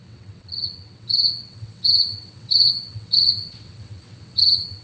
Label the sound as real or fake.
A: fake